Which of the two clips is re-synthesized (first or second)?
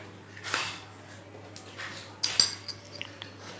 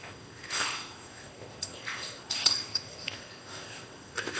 second